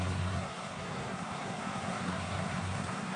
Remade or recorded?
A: remade